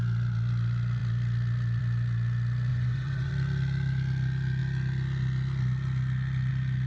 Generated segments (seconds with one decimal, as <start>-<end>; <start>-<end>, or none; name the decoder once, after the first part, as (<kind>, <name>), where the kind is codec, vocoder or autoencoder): 2.7-3.3 (vocoder, Vocos)